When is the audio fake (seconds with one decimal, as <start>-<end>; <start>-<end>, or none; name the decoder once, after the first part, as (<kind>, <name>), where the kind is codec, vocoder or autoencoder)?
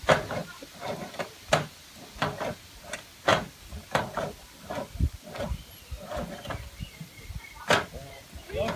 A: 3.3-5.2 (vocoder, BigVGAN v2)